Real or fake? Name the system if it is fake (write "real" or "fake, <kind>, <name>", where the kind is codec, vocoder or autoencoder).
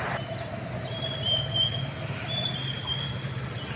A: real